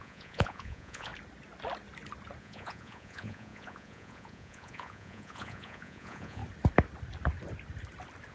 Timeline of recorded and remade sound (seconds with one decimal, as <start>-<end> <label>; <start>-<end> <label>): 0.0-1.1 remade; 1.1-2.4 recorded; 2.4-6.4 remade; 6.4-8.3 recorded

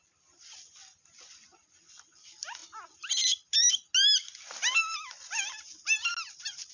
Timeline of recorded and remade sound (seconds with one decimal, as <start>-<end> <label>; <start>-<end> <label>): 0.0-6.7 recorded

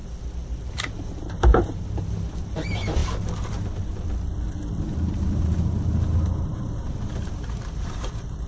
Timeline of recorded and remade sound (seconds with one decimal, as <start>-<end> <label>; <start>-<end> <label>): 0.0-0.7 recorded; 0.7-3.0 remade; 3.0-4.8 recorded; 4.8-8.5 remade